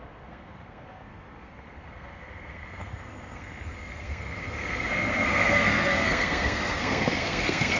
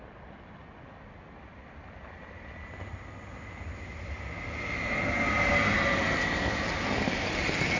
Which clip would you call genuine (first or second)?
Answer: second